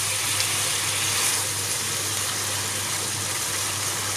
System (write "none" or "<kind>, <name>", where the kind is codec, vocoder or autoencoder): none